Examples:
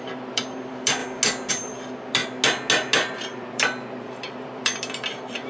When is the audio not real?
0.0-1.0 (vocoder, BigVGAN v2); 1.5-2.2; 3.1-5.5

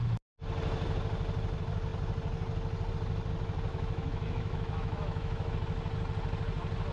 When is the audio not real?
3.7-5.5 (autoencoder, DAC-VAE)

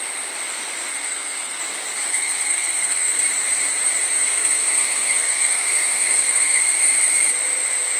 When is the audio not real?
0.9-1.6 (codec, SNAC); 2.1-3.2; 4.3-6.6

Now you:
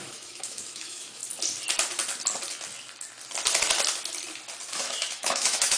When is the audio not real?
0.0-1.2 (autoencoder, DAC-VAE); 4.7-5.8